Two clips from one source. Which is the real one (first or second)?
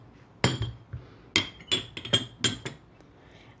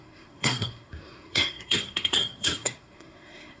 first